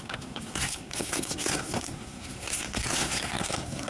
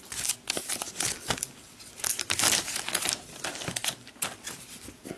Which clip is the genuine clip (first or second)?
second